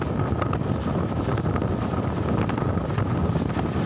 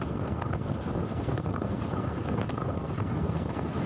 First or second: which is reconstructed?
second